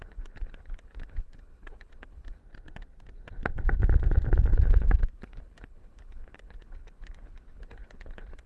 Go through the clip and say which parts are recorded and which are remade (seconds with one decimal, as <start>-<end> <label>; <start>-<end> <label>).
0.0-2.4 remade; 2.4-4.6 recorded; 4.6-8.5 remade